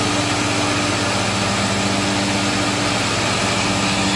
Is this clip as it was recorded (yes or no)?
yes